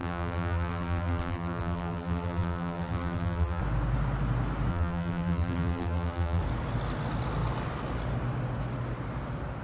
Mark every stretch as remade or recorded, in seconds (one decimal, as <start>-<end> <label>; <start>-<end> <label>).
0.0-3.6 remade; 3.6-4.7 recorded; 4.7-6.4 remade; 6.4-9.6 recorded